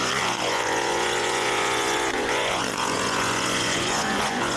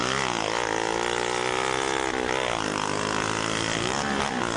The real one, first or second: second